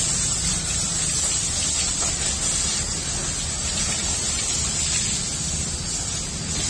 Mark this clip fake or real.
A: real